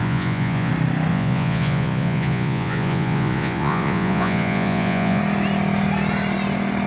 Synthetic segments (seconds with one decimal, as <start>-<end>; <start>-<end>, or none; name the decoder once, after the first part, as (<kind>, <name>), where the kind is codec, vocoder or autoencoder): 0.0-0.7 (vocoder, Vocos); 1.1-5.2